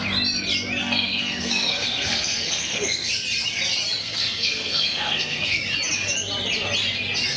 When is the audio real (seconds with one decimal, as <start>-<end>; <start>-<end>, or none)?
0.0-0.8; 3.1-4.0; 5.6-7.4